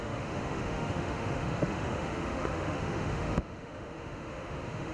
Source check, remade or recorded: remade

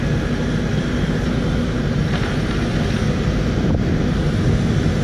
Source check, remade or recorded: recorded